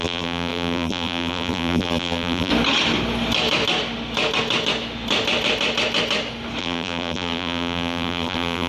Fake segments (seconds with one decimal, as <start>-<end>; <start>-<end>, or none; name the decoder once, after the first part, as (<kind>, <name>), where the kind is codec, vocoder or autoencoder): 0.0-2.5 (vocoder, BigVGAN v2); 6.6-8.7